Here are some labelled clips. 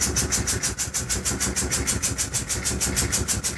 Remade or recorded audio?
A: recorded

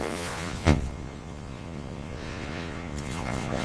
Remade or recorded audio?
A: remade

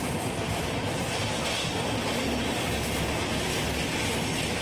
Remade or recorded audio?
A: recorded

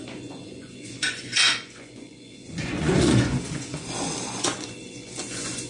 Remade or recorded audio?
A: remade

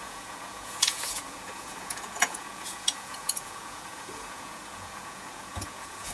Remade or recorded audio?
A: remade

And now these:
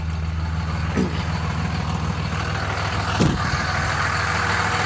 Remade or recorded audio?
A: recorded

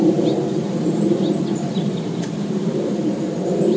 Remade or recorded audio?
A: recorded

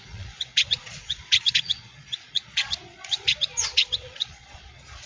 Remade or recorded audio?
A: remade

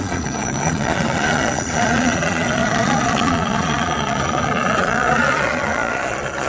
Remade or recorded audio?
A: remade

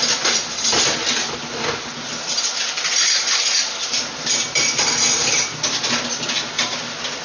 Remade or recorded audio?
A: recorded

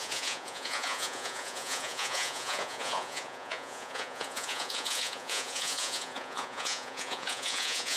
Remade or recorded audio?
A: remade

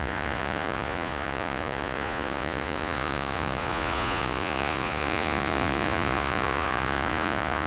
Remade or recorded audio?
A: remade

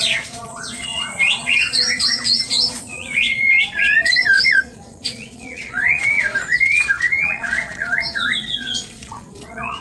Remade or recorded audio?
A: remade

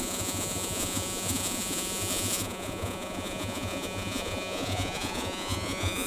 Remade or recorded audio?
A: remade